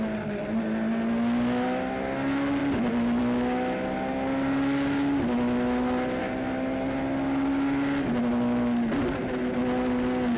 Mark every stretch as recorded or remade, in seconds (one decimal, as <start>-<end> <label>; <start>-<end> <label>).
0.0-10.4 recorded

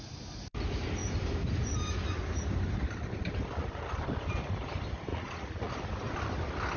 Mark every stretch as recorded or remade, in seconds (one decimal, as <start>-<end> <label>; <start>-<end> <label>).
0.0-5.1 recorded; 5.1-5.7 remade; 5.7-6.8 recorded

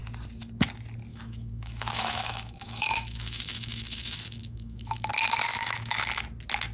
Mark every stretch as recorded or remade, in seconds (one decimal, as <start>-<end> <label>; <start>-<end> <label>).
0.0-1.1 recorded; 1.1-5.1 remade; 5.1-5.6 recorded; 5.6-6.2 remade; 6.2-6.7 recorded

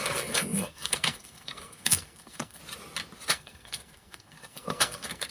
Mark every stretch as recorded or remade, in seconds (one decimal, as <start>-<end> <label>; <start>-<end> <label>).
0.0-2.6 remade; 2.6-3.3 recorded; 3.3-5.3 remade

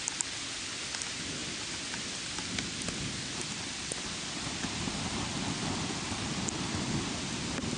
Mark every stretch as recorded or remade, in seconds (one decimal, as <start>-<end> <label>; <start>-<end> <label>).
0.0-7.8 recorded

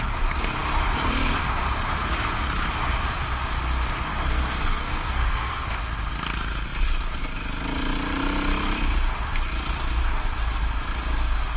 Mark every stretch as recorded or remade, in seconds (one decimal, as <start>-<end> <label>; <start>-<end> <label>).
0.0-4.1 recorded; 4.1-5.8 remade; 5.8-11.6 recorded

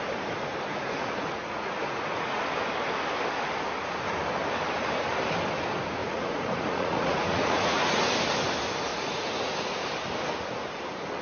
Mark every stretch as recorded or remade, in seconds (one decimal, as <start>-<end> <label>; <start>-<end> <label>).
0.0-0.7 recorded; 0.7-2.4 remade; 2.4-6.0 recorded; 6.0-8.0 remade; 8.0-8.9 recorded; 8.9-9.8 remade; 9.8-11.2 recorded